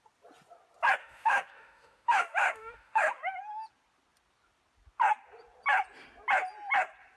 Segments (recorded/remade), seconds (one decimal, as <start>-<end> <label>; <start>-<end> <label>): 0.0-1.0 recorded; 1.0-3.2 remade; 3.2-7.2 recorded